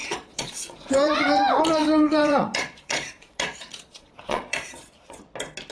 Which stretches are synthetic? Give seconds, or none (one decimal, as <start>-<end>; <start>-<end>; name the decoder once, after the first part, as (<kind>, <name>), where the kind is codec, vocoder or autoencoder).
0.0-1.4 (vocoder, Vocos); 1.8-5.2